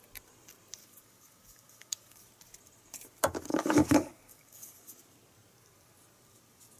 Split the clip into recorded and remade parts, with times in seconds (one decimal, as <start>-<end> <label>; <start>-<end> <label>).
0.0-0.8 recorded; 0.8-2.2 remade; 2.2-3.5 recorded; 3.5-5.0 remade; 5.0-6.8 recorded